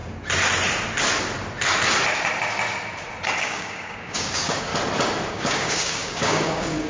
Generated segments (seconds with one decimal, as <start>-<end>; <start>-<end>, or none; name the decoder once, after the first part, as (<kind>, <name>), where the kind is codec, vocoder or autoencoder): 3.4-4.7 (codec, DAC); 5.3-6.9